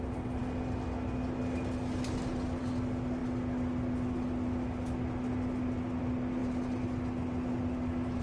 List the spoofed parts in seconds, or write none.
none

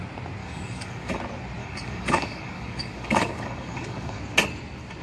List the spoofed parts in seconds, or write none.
0.4-1.2 (codec, DAC); 1.6-4.2

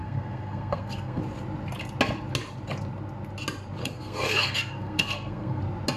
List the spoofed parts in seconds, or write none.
0.0-1.2 (codec, SNAC); 3.8-5.6